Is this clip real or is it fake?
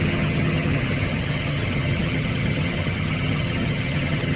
fake